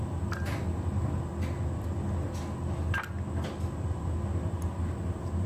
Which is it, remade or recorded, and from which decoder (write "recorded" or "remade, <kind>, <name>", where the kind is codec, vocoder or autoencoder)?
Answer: recorded